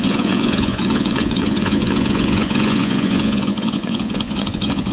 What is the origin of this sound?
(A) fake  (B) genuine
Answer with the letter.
A